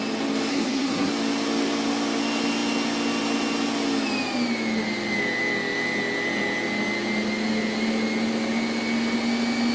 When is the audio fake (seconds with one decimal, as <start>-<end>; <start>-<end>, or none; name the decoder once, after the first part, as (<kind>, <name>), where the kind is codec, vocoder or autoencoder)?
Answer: 0.5-1.1 (codec, SNAC)